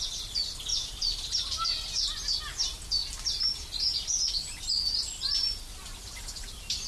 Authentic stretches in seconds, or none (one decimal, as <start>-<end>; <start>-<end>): 0.0-6.9